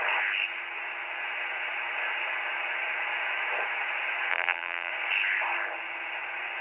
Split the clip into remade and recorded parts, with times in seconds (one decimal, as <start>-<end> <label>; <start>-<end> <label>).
0.0-4.3 recorded; 4.3-4.9 remade; 4.9-6.6 recorded